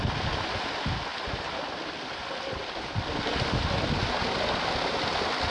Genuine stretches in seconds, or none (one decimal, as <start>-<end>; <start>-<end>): 0.0-1.1; 4.4-5.5